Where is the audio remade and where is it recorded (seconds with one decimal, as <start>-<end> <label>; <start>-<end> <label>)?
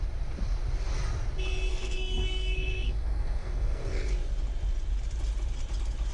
0.0-1.7 recorded; 1.7-4.1 remade; 4.1-6.1 recorded